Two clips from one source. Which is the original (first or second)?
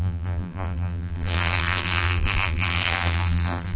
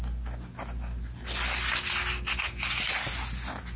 second